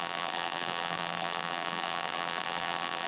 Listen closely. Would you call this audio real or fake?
fake